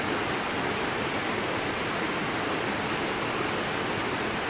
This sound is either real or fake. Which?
real